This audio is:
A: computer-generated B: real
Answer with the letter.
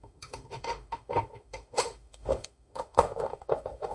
A